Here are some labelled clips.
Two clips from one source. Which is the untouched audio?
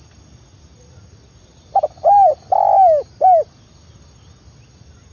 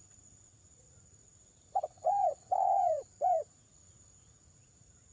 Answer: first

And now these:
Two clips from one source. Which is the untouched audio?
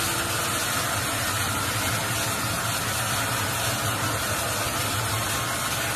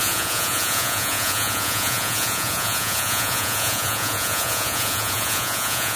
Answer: first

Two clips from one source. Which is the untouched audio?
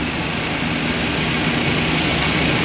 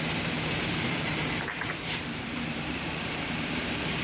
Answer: first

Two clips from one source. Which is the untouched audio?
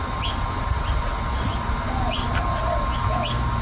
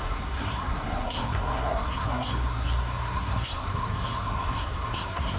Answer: first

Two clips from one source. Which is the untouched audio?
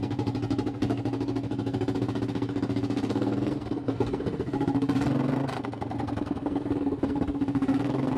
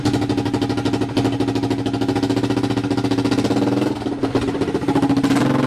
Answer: second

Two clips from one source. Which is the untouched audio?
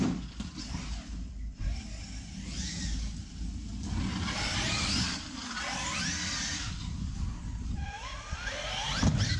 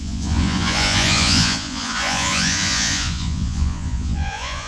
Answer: first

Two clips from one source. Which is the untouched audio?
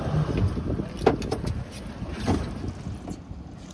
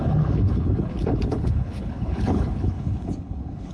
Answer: first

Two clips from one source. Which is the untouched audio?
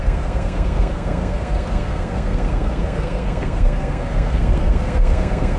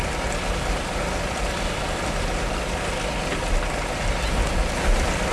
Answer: second